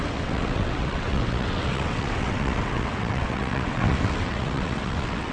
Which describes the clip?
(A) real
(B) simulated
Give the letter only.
B